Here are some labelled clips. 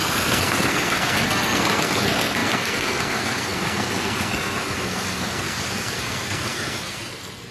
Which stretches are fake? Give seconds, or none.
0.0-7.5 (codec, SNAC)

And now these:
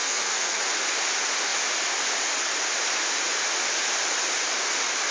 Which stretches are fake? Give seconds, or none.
0.0-0.6 (codec, SNAC)

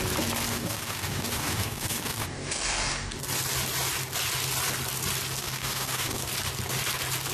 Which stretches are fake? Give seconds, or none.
0.5-3.2 (codec, DAC); 5.4-6.3

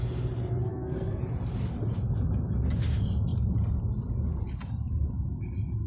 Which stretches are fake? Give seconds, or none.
0.6-1.2 (codec, SNAC)

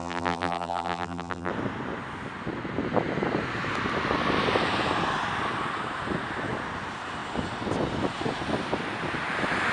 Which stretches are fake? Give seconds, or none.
0.0-1.5 (vocoder, BigVGAN v2)

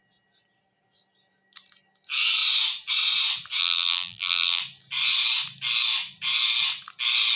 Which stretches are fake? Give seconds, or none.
3.6-4.6 (vocoder, BigVGAN v2)